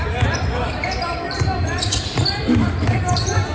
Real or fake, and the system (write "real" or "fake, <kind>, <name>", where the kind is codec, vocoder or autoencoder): fake, vocoder, BigVGAN v2